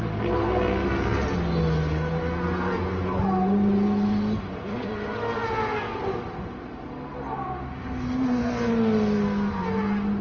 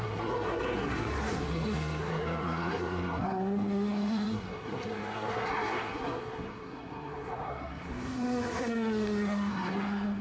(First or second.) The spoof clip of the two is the second